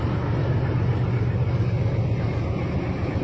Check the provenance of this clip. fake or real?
real